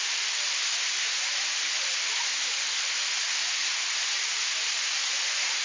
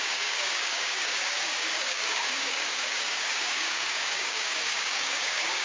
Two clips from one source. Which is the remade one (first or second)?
second